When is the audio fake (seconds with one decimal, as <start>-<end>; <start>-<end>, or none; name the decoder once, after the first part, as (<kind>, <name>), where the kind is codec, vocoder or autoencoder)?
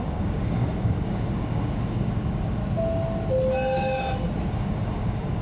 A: 0.0-2.6 (codec, DAC); 4.5-5.4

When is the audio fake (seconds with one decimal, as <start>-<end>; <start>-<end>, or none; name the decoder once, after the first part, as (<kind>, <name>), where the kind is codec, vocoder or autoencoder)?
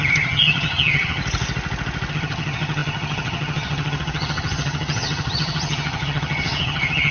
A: 0.0-1.2 (vocoder, HiFi-GAN); 2.1-7.1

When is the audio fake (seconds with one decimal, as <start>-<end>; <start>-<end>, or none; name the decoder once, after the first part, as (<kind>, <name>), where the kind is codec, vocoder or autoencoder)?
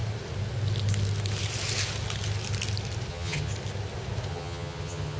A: 3.1-3.5 (vocoder, HiFi-GAN); 4.3-5.2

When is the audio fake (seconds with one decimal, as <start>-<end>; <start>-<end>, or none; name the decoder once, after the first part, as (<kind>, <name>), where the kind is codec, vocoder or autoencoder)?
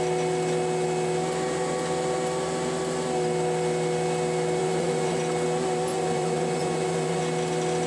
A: 4.6-5.2 (vocoder, Vocos); 5.9-7.2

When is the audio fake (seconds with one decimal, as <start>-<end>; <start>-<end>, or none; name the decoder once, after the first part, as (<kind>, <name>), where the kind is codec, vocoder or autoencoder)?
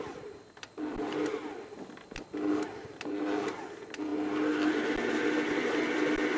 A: none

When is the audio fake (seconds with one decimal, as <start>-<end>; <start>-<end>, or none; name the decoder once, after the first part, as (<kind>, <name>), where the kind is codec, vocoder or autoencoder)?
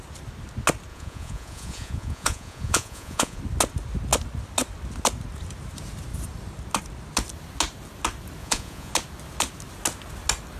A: 0.9-3.4 (vocoder, Vocos); 8.4-8.9